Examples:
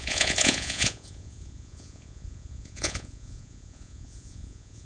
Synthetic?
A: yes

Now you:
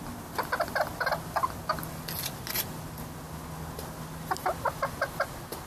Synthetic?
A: no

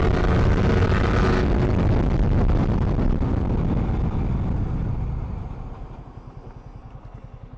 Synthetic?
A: no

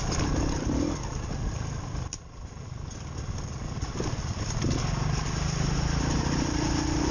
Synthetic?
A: no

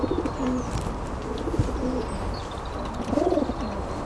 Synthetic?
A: no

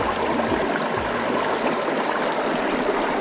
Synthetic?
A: no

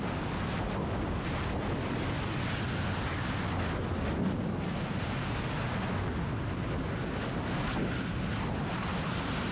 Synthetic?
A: no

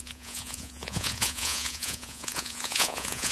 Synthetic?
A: yes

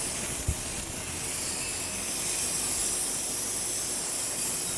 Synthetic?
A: no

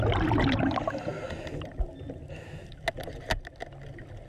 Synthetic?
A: no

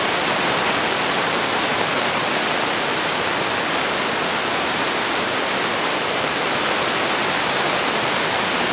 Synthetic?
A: no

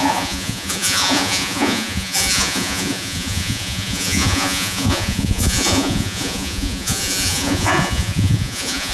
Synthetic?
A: yes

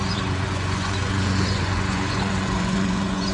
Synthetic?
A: yes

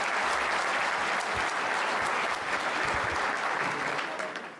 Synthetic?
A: no